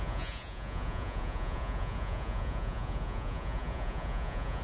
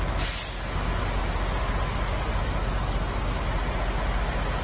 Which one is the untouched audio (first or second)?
second